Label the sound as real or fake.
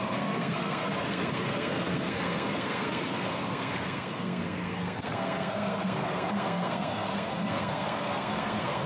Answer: fake